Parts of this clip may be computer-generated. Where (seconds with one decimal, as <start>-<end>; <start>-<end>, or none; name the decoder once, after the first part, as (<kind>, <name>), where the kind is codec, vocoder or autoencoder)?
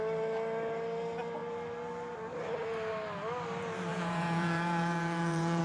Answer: 3.9-5.6 (vocoder, Vocos)